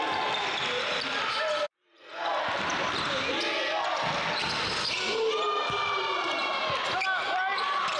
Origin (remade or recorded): recorded